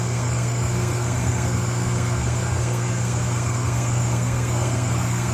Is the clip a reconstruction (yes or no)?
yes